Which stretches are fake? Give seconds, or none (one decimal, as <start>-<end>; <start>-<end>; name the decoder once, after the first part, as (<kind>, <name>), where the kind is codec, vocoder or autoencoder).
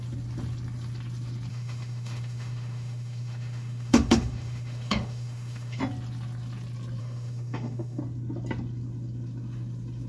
1.5-5.8 (autoencoder, DAC-VAE); 7.0-8.0